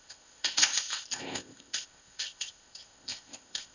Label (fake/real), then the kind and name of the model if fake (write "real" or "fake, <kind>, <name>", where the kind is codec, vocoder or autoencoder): fake, codec, ZipCodec